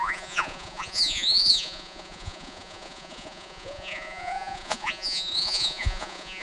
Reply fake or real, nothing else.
fake